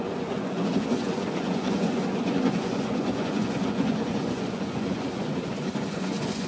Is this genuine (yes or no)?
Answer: no